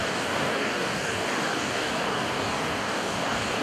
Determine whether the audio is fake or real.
fake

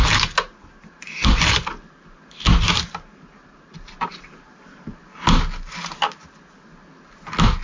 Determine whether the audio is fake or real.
real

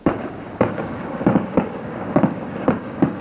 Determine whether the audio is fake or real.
fake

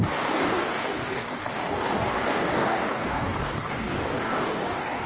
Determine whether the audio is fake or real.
fake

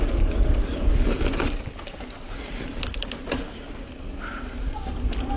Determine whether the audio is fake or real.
real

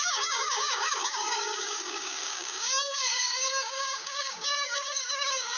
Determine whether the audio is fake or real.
fake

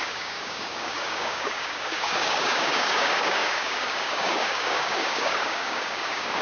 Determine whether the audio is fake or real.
fake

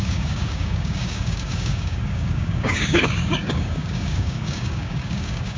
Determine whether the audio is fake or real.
fake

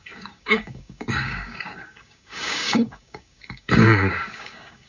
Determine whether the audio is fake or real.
fake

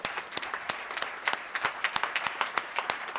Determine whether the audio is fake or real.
real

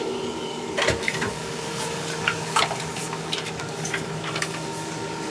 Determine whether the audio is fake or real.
fake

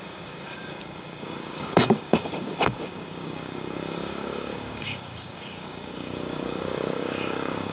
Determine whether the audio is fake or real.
fake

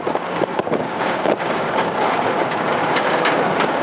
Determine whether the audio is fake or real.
fake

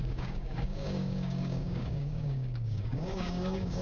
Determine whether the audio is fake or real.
fake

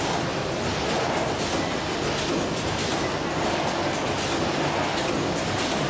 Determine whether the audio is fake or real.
real